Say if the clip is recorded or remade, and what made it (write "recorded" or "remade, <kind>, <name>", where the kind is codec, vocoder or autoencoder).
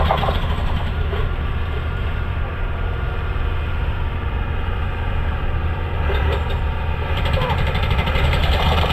remade, vocoder, BigVGAN v2